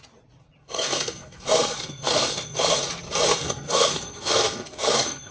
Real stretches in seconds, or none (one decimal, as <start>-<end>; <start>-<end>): 0.0-0.6; 2.8-3.3